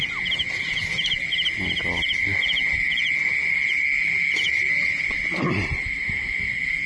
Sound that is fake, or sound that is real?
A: real